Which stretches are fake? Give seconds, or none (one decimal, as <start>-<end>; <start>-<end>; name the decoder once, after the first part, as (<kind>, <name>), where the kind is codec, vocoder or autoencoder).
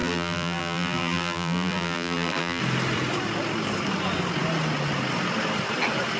0.0-2.6 (vocoder, BigVGAN v2)